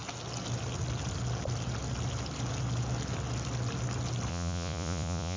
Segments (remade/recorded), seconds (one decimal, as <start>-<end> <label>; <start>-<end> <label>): 0.0-4.3 recorded; 4.3-5.4 remade